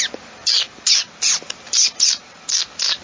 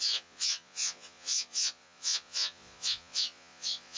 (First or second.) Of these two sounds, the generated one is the second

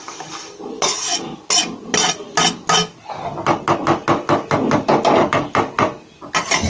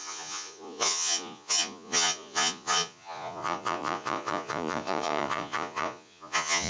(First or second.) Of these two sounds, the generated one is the second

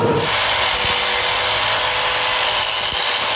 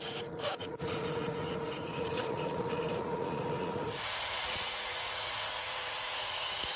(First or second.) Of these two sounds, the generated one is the second